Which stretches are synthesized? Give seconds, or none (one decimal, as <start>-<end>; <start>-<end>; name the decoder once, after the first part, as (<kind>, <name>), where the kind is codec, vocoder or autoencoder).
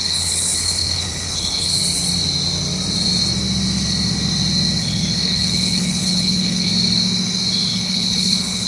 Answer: 0.0-1.8 (codec, HILCodec); 4.8-6.7; 7.7-8.7